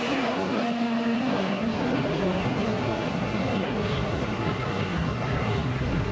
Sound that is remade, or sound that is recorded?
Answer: remade